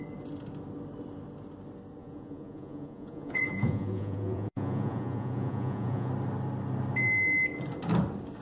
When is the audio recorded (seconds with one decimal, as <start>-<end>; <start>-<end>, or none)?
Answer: 0.0-2.0; 6.1-8.4